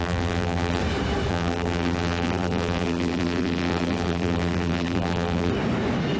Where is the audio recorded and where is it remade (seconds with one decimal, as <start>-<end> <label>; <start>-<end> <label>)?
0.0-0.8 remade; 0.8-1.3 recorded; 1.3-5.5 remade; 5.5-6.2 recorded